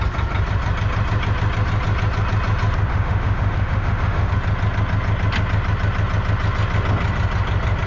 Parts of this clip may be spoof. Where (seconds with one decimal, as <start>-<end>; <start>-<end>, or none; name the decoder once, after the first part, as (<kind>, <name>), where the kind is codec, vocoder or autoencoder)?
2.9-4.3 (autoencoder, DAC-VAE)